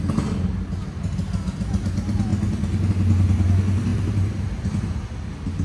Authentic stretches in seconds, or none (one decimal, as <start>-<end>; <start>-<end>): 0.0-3.9; 4.7-5.6

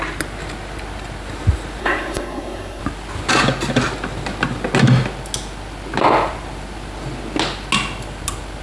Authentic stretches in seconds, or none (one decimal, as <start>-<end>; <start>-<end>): 0.0-1.8; 2.8-8.6

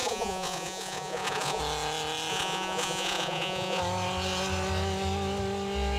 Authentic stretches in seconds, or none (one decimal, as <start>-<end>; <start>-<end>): 1.6-2.3; 3.8-6.0

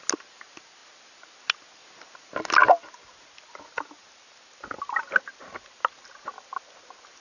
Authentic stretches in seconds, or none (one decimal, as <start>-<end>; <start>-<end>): 0.0-7.2

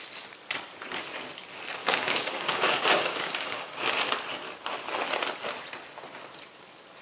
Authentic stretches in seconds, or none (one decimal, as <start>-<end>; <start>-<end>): 0.0-1.8; 3.9-7.0

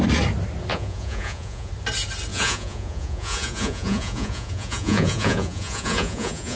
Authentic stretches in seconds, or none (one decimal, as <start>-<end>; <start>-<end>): 0.0-0.7; 1.7-2.3

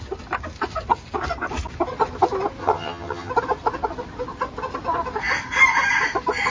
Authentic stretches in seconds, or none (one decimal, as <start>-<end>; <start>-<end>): 0.0-2.6; 3.3-6.5

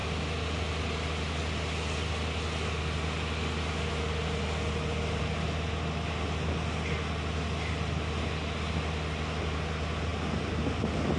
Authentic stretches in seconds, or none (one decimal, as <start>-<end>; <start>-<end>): 0.0-11.2